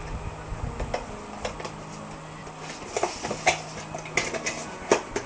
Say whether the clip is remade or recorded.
recorded